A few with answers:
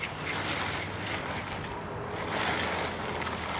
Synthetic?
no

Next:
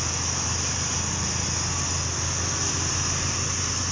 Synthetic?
no